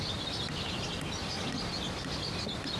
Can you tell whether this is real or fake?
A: real